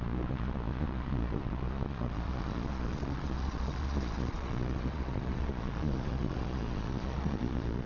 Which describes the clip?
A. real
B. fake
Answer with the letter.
B